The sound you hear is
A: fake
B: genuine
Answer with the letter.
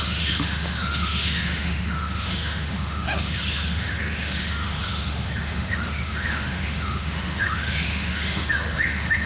A